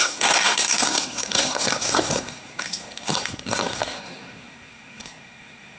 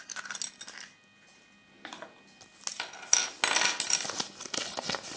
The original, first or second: second